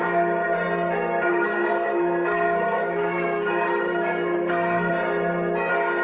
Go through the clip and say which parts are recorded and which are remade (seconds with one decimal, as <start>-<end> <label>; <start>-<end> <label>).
0.0-1.3 recorded; 1.3-4.9 remade; 4.9-6.0 recorded